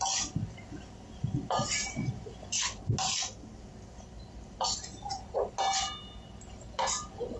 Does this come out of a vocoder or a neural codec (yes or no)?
no